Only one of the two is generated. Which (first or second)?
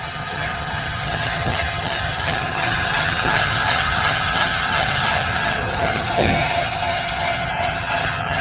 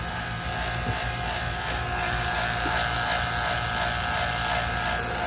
first